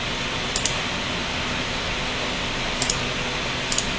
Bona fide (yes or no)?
yes